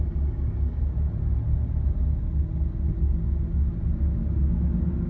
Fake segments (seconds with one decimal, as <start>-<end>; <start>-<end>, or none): 0.0-0.8